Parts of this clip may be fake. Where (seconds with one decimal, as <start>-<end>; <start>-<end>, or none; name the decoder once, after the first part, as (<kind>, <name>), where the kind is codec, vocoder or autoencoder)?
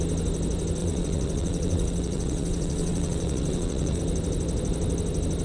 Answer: 0.8-4.0 (vocoder, WaveNeXt)